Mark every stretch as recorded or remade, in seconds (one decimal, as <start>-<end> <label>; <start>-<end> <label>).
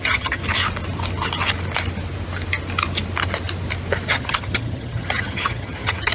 0.0-0.4 remade; 0.4-4.1 recorded; 4.1-6.1 remade